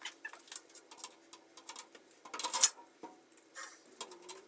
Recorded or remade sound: recorded